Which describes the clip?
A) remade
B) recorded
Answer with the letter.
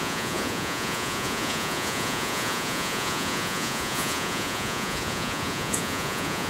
A